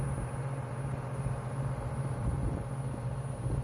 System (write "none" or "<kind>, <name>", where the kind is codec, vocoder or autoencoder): none